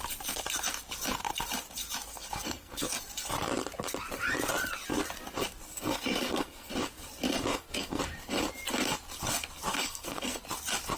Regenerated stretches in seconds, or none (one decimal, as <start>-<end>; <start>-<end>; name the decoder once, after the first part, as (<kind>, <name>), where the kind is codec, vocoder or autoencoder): 2.1-3.0 (codec, SNAC); 5.7-6.7; 7.5-8.0; 9.7-10.4